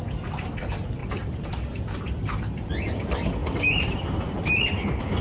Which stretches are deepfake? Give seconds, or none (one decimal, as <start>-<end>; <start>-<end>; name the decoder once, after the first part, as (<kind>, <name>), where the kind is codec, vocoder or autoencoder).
1.0-2.5 (vocoder, BigVGAN v2); 3.4-5.2